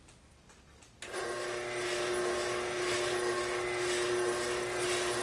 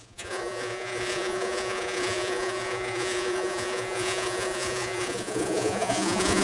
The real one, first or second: first